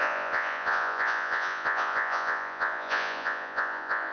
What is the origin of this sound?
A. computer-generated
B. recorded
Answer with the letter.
A